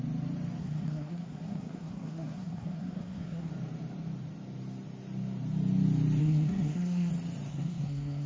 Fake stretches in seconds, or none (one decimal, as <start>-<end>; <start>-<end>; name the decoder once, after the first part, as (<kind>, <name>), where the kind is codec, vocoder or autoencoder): 0.6-3.5 (codec, SNAC); 6.2-7.1; 7.5-8.3